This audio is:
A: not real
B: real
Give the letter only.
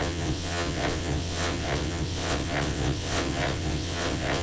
A